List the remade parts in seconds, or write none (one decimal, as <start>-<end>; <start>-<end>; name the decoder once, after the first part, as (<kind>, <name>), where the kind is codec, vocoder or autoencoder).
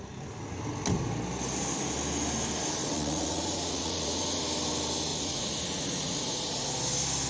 2.8-4.4 (vocoder, Vocos); 5.1-6.7